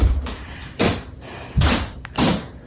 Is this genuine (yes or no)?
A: yes